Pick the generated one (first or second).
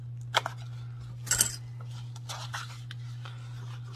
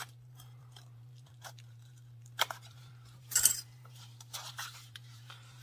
second